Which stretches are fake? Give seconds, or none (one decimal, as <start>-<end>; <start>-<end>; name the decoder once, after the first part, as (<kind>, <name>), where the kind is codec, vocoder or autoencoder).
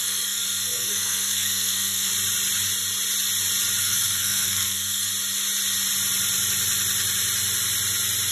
0.0-2.1 (codec, SNAC); 3.8-5.1